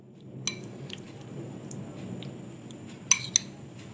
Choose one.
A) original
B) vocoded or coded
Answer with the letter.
A